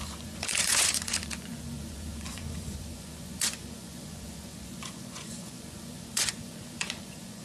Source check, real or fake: fake